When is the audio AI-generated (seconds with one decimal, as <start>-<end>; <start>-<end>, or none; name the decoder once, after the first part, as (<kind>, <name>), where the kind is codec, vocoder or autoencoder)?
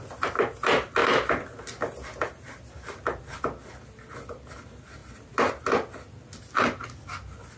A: none